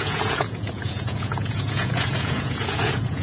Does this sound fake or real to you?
fake